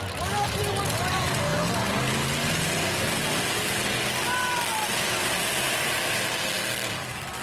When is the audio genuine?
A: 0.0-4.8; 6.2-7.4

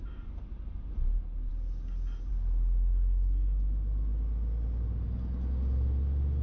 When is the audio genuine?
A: 0.0-6.4

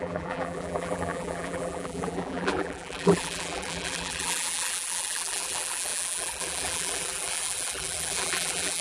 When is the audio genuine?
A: none

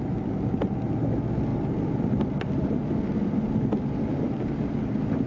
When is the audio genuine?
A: 0.0-1.5; 3.1-4.1; 4.8-5.3

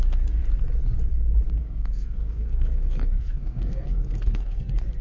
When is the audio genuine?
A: 0.0-1.6; 4.6-5.0